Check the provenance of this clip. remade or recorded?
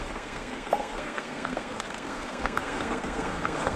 remade